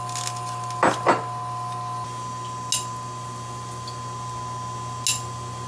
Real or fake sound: real